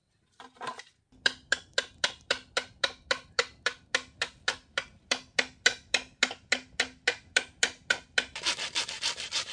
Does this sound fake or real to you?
real